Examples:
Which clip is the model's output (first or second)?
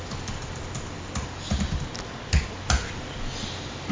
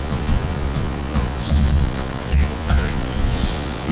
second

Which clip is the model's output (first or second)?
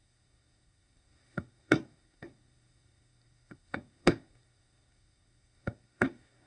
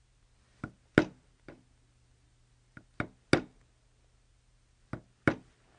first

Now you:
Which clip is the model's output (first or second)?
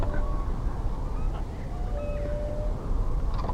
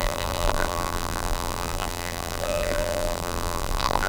second